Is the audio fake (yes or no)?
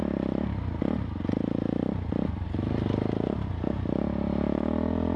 no